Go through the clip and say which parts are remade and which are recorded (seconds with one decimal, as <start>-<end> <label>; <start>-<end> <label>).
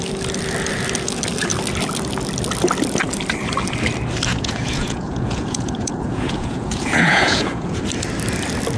0.0-4.3 recorded; 4.3-7.8 remade; 7.8-8.8 recorded